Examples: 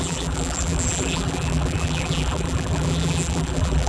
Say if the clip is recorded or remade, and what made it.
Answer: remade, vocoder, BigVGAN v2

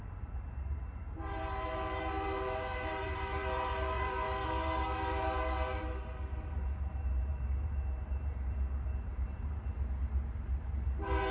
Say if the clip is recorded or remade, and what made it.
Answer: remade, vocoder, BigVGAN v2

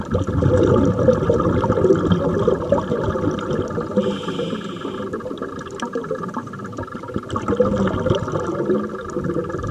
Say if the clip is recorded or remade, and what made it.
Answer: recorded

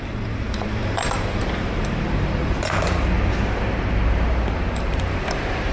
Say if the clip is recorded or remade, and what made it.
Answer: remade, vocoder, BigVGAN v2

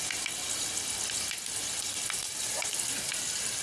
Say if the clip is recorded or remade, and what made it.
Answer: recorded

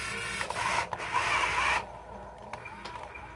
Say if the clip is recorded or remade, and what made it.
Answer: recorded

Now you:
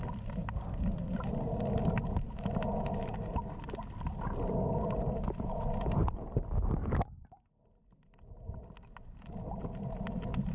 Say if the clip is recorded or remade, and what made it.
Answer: recorded